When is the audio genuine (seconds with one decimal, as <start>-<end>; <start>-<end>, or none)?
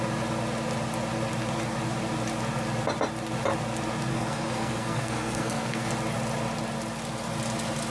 0.0-4.1; 5.9-7.9